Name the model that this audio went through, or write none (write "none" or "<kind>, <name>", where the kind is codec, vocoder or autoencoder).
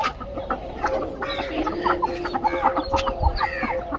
none